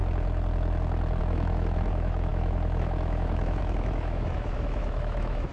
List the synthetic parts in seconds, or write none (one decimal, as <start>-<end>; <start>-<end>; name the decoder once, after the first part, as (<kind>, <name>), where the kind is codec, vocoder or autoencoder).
1.2-5.5 (autoencoder, DAC-VAE)